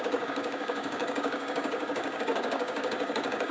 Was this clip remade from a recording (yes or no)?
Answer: yes